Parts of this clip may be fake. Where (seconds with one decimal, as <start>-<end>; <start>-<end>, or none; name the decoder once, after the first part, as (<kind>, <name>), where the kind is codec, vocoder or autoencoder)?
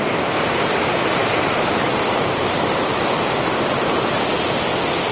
none